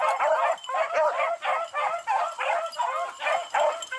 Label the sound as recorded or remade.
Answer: recorded